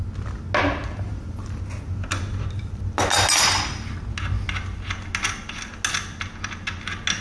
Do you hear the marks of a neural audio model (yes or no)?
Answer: no